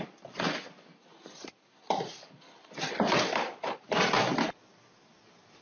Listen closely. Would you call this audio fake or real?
fake